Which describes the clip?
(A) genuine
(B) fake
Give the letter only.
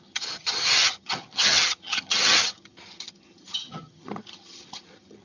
B